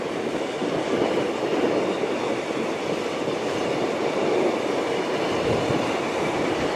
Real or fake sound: real